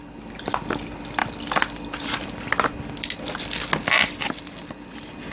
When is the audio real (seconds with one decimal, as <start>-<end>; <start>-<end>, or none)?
0.0-5.3